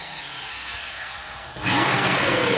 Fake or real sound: fake